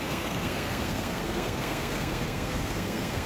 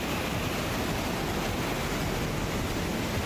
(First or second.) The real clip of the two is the second